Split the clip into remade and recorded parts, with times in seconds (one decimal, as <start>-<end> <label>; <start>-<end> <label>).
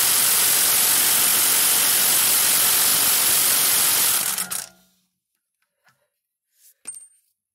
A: 0.0-7.5 recorded